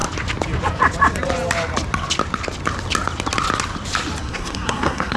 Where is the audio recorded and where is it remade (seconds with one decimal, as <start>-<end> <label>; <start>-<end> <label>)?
0.0-4.2 recorded; 4.2-5.2 remade